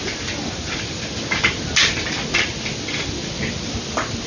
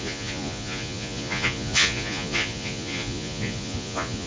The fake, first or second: second